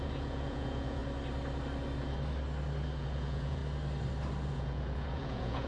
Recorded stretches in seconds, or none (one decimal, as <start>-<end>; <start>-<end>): 1.0-3.0; 3.6-4.5